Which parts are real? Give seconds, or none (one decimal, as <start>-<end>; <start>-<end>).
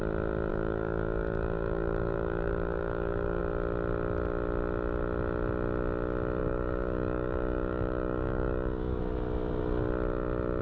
0.0-0.5; 3.4-6.4; 9.0-10.6